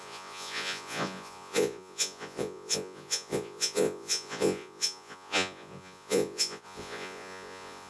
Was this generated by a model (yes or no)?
yes